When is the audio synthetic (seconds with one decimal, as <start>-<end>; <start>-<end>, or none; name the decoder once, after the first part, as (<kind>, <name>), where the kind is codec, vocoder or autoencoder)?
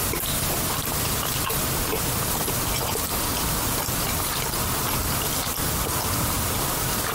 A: 0.0-0.7 (vocoder, BigVGAN v2)